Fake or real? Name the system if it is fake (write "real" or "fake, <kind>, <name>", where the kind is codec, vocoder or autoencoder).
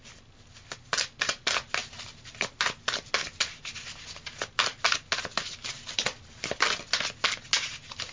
real